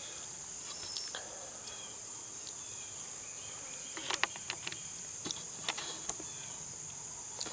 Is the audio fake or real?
real